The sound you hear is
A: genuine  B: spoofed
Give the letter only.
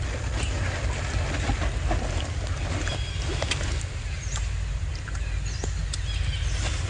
A